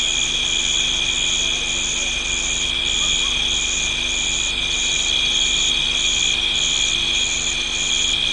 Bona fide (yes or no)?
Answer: yes